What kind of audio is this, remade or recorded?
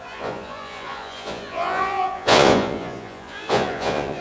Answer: remade